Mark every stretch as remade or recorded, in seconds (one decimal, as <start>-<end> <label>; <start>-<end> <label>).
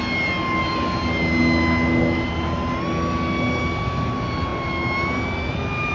0.0-5.9 recorded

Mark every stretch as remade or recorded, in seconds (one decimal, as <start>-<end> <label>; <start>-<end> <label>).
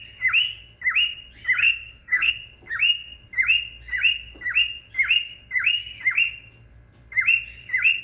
0.0-1.6 recorded; 1.6-2.3 remade; 2.3-8.0 recorded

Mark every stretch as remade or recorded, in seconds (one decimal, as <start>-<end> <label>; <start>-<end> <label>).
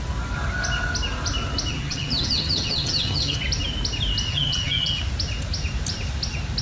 0.0-1.7 recorded; 1.7-3.4 remade; 3.4-4.3 recorded; 4.3-5.0 remade; 5.0-6.6 recorded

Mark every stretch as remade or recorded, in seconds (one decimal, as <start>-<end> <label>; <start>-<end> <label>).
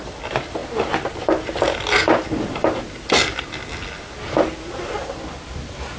0.0-6.0 recorded